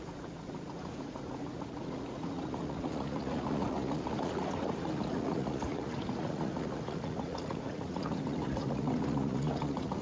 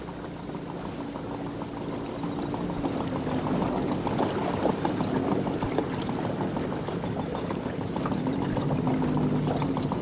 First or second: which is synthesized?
first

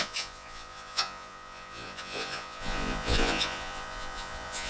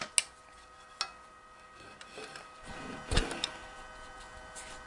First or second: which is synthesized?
first